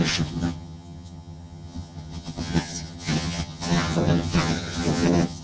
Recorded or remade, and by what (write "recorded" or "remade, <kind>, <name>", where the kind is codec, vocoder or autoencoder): remade, vocoder, HiFi-GAN